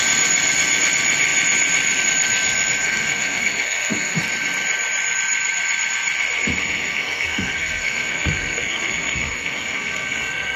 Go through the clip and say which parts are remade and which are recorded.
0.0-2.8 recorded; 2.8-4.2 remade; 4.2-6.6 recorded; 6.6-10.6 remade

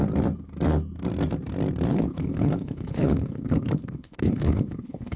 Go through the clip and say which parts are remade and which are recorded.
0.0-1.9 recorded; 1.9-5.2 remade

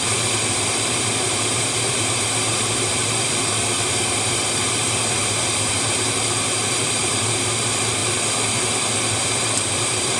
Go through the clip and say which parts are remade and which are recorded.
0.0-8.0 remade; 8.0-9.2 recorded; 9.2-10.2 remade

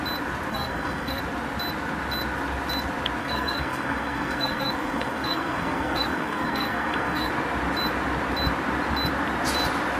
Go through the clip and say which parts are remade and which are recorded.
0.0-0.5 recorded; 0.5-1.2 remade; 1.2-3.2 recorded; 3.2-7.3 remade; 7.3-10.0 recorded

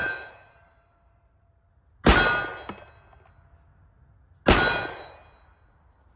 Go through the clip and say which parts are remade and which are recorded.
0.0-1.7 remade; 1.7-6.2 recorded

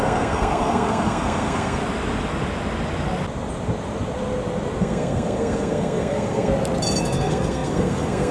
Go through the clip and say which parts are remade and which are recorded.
0.0-1.8 remade; 1.8-4.8 recorded; 4.8-6.5 remade; 6.5-7.0 recorded; 7.0-8.3 remade

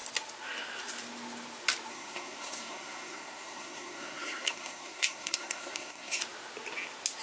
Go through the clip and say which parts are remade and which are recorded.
0.0-1.9 recorded; 1.9-6.2 remade; 6.2-7.2 recorded

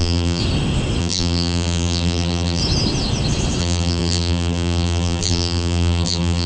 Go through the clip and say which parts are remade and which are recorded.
0.0-0.4 remade; 0.4-1.0 recorded; 1.0-2.6 remade; 2.6-3.6 recorded; 3.6-6.5 remade